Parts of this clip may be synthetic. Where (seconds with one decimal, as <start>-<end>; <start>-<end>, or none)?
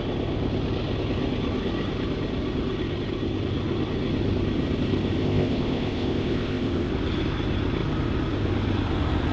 5.2-6.9